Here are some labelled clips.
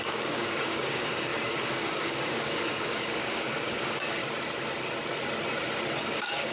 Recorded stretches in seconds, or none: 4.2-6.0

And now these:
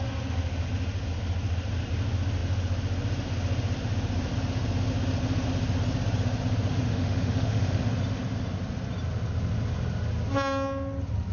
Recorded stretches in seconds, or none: 0.0-6.7; 7.8-11.3